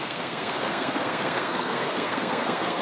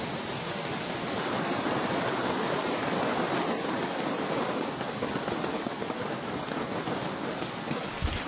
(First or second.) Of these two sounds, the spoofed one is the first